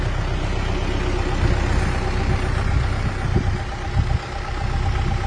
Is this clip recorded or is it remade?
recorded